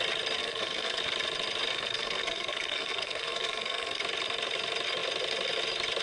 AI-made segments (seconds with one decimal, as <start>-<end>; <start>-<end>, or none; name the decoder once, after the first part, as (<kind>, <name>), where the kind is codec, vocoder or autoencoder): 0.4-1.0 (codec, SNAC); 1.7-4.0